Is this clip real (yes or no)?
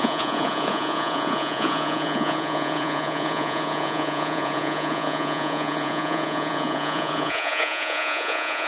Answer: no